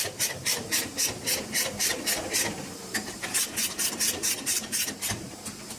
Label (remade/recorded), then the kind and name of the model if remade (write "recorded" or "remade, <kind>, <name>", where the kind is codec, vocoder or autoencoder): remade, vocoder, BigVGAN v2